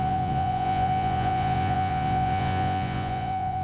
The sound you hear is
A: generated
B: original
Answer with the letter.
A